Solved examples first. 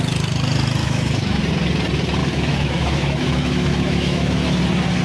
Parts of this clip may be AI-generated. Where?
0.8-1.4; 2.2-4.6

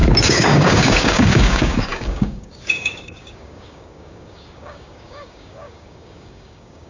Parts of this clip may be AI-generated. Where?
0.0-6.9

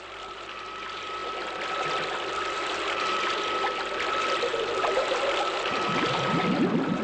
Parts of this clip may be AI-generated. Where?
none

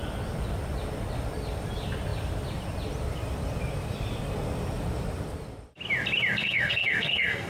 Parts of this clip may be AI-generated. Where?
6.4-7.5

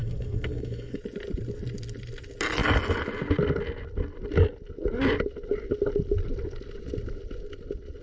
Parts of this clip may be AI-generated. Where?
0.0-1.0

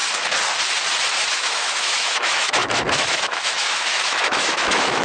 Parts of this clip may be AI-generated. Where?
1.3-5.0

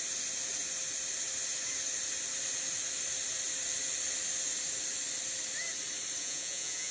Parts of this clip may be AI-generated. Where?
6.2-6.9

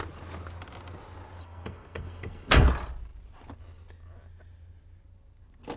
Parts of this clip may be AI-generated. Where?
1.4-2.7